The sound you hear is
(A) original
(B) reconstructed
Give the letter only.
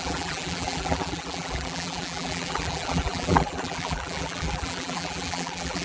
B